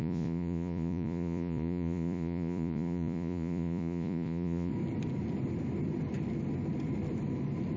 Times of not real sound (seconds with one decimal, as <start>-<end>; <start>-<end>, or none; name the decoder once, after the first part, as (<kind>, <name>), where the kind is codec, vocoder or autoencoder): 0.0-4.7 (vocoder, Vocos)